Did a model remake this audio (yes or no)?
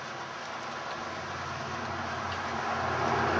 no